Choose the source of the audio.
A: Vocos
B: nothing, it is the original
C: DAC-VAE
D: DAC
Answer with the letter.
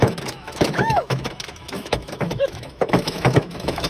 C